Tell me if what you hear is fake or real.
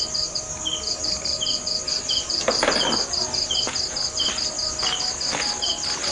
real